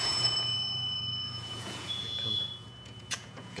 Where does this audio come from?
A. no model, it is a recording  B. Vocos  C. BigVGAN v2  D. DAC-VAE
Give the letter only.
B